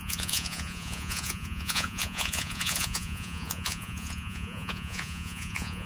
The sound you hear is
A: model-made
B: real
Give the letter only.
A